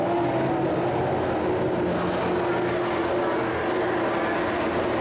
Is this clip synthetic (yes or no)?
no